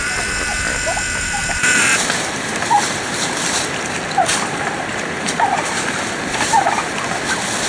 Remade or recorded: recorded